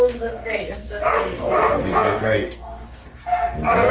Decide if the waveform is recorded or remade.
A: remade